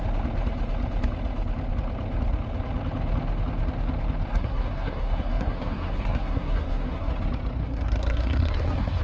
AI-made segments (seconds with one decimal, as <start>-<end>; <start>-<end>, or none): 4.3-7.1; 7.6-9.0